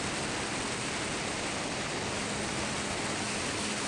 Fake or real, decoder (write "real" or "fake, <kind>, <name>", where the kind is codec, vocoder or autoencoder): real